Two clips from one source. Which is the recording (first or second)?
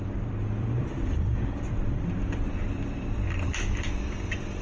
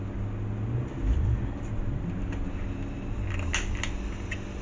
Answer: second